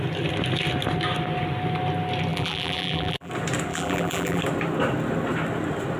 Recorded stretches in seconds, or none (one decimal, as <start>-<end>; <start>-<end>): 0.0-2.3; 3.3-3.7; 4.4-6.0

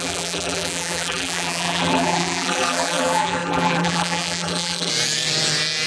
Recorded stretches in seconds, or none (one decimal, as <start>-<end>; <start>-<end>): 4.9-5.9